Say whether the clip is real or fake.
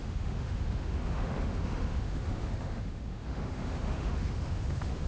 fake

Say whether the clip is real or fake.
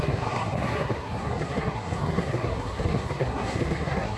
fake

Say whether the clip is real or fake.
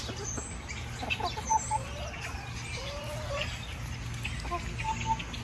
real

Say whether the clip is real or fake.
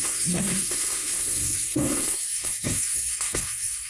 fake